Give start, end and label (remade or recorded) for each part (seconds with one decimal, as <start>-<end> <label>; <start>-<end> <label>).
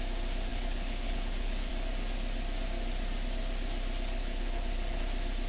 0.0-0.5 recorded; 0.5-1.7 remade; 1.7-4.2 recorded; 4.2-5.0 remade; 5.0-5.5 recorded